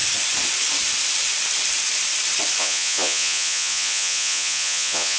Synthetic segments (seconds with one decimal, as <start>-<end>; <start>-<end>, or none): 2.6-5.2